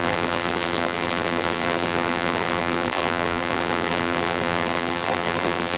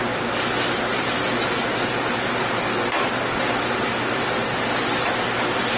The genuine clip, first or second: second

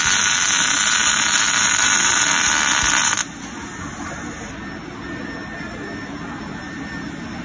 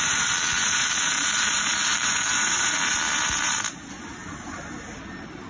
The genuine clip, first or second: first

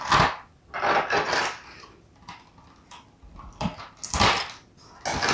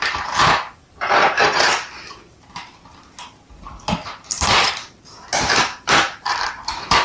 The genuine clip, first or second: first